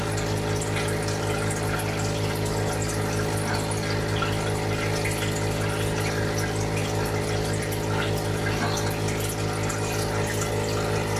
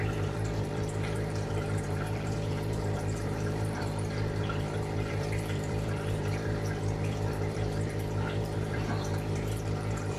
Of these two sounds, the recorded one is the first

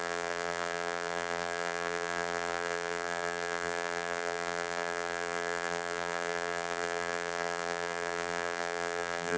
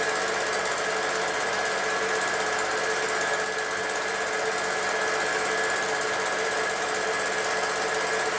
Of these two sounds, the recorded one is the second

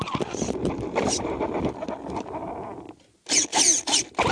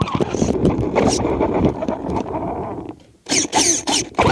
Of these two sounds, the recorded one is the first